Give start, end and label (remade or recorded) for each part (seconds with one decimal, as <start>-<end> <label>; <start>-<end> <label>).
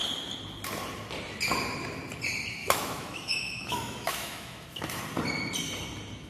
0.0-2.6 recorded; 2.6-5.0 remade; 5.0-6.3 recorded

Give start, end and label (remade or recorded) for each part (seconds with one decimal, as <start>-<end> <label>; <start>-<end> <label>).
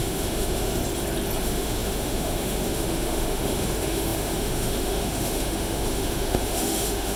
0.0-0.8 remade; 0.8-1.4 recorded; 1.4-7.2 remade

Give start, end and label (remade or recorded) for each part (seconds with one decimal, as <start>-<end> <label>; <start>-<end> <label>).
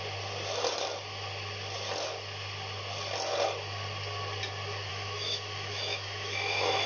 0.0-4.9 recorded; 4.9-6.9 remade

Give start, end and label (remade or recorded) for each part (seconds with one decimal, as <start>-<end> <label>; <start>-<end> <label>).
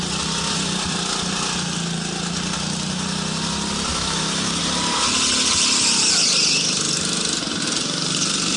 0.0-3.9 recorded; 3.9-4.6 remade; 4.6-8.6 recorded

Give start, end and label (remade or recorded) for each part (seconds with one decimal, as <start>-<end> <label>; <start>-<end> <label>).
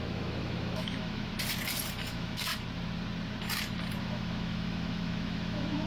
0.0-1.3 remade; 1.3-2.1 recorded; 2.1-2.5 remade; 2.5-4.0 recorded; 4.0-5.9 remade